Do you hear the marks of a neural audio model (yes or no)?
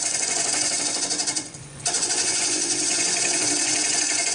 yes